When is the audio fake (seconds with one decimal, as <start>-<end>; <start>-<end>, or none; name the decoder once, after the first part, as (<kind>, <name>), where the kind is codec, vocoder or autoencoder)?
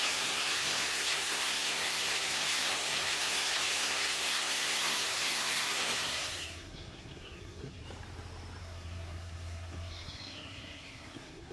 0.0-7.8 (codec, SNAC); 8.6-11.5